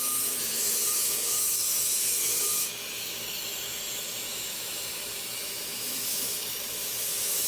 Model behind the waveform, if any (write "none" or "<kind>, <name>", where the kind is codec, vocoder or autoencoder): autoencoder, DAC-VAE